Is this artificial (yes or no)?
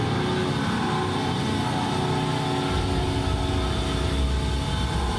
no